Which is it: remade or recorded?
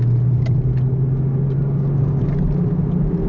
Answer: recorded